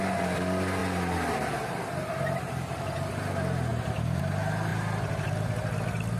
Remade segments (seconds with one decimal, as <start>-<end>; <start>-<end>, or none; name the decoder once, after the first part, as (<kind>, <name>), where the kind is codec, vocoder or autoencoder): none

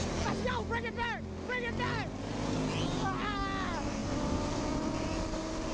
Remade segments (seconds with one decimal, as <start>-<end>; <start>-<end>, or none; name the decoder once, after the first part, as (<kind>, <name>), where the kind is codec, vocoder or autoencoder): 4.0-4.6 (vocoder, BigVGAN v2)

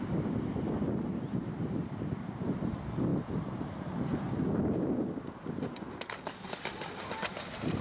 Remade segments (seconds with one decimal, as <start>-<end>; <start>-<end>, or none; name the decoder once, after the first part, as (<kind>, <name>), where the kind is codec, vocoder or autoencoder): none

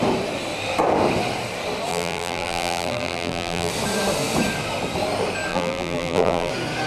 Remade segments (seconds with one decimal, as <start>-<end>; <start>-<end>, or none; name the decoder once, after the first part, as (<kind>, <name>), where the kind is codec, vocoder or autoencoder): 1.9-3.7 (vocoder, BigVGAN v2); 5.5-6.5

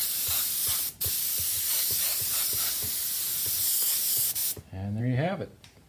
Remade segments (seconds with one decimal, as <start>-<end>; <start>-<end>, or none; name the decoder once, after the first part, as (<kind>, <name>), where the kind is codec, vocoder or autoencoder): 0.0-4.4 (vocoder, BigVGAN v2); 5.0-5.9